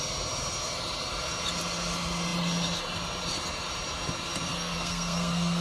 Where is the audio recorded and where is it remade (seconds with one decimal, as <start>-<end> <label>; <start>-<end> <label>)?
0.0-4.5 recorded; 4.5-5.6 remade